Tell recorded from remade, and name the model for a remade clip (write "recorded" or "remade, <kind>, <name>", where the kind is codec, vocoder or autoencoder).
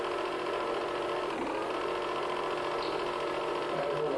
recorded